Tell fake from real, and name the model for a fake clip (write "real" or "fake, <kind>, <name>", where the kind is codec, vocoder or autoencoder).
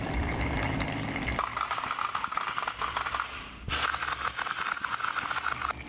real